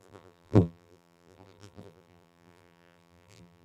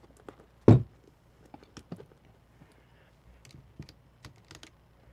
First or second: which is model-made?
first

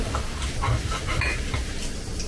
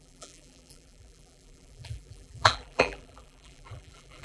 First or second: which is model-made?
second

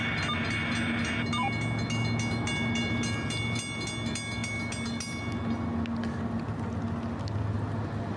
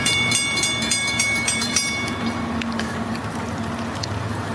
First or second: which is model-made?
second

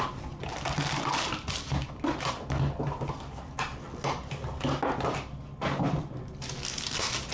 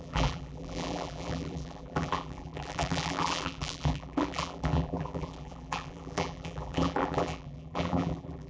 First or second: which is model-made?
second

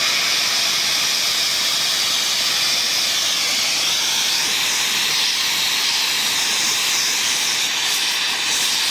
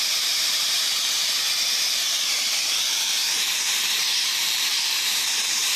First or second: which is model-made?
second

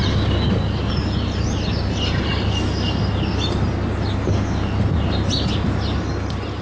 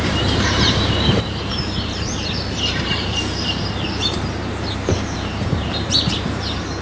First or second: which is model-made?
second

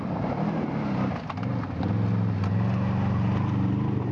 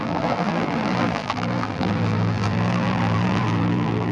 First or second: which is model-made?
second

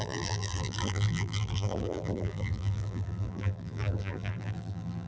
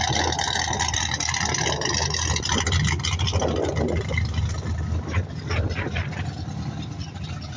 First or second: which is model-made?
first